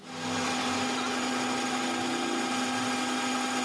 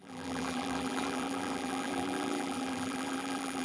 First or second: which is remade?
second